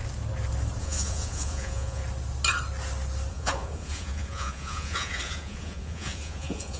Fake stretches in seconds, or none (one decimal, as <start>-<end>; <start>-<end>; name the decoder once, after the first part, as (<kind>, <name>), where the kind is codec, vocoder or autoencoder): 0.8-2.0 (vocoder, Vocos); 3.3-6.8